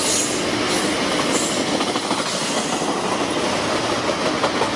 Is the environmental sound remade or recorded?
recorded